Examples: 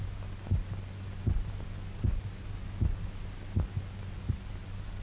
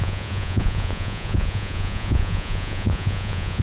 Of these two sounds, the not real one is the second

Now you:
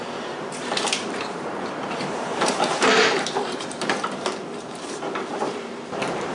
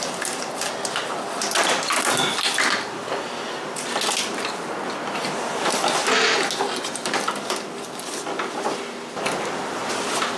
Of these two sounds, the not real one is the first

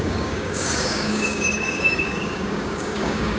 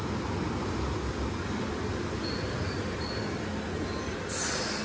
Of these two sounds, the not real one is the first